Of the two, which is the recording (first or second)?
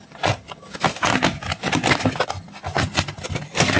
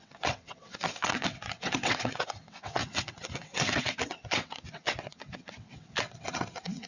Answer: first